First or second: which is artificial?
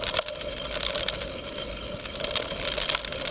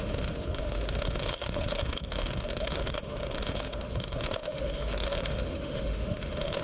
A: second